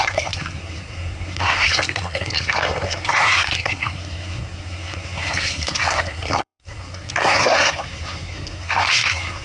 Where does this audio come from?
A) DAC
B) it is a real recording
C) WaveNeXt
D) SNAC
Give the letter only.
D